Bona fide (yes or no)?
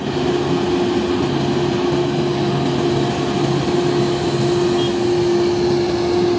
yes